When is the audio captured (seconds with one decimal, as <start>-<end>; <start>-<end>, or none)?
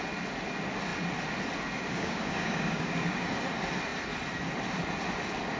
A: 0.0-1.9; 3.3-5.6